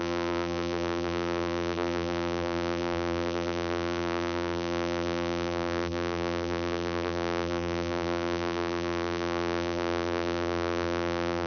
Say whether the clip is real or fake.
fake